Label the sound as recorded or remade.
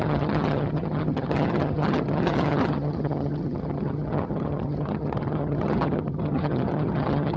remade